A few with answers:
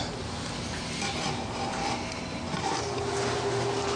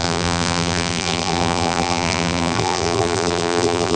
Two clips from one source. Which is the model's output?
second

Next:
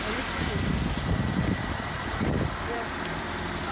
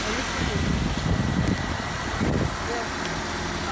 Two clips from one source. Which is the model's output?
first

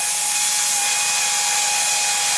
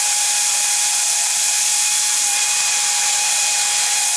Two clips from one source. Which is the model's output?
second